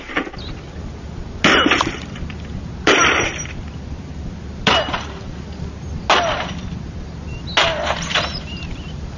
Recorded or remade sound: recorded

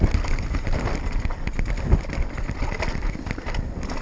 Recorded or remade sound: recorded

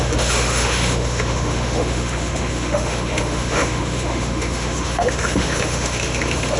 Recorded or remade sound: remade